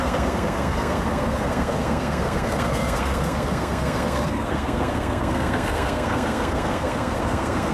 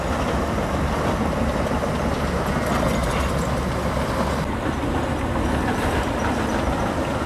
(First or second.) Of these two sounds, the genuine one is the second